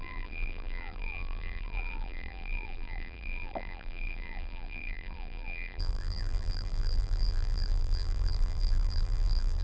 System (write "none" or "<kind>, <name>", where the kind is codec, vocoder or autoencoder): vocoder, BigVGAN v2